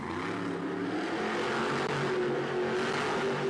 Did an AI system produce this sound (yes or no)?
no